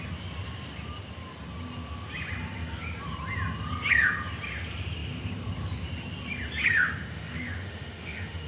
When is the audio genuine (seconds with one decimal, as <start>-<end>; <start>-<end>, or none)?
0.0-7.1